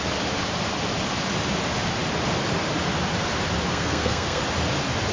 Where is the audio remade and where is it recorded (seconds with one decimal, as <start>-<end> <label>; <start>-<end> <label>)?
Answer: 0.0-3.7 recorded; 3.7-4.4 remade; 4.4-5.1 recorded